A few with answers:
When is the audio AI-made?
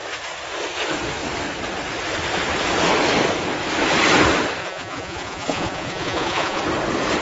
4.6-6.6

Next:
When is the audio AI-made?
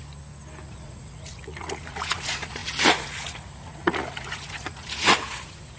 0.7-5.8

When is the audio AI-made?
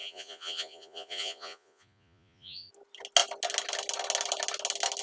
0.0-2.7